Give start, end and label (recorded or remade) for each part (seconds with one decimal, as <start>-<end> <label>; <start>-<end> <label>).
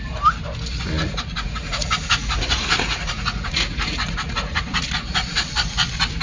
0.0-1.0 recorded; 1.0-4.6 remade; 4.6-5.0 recorded; 5.0-5.5 remade; 5.5-6.2 recorded